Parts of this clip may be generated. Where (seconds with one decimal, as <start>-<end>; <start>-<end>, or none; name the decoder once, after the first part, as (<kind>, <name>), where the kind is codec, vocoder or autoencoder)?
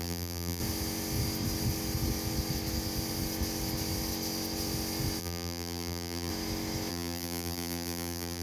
0.0-0.6 (vocoder, BigVGAN v2); 5.2-6.3; 6.9-8.4